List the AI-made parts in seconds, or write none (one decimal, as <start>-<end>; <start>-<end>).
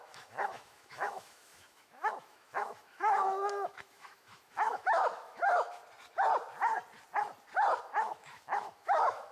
0.0-5.8; 7.8-9.3